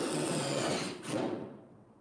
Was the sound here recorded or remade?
remade